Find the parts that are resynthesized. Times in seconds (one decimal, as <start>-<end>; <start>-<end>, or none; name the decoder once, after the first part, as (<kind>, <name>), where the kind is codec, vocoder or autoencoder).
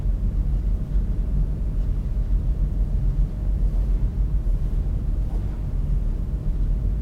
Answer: 0.5-2.1 (vocoder, BigVGAN v2); 4.1-6.5